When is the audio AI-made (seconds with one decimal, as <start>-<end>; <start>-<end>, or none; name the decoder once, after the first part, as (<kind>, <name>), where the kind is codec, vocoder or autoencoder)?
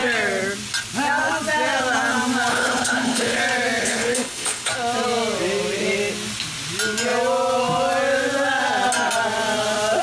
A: 2.5-3.4 (codec, HILCodec); 3.8-4.7